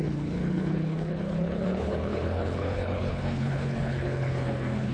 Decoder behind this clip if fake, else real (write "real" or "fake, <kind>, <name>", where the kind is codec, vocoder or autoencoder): fake, codec, HILCodec